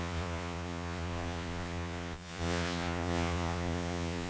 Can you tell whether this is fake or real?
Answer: fake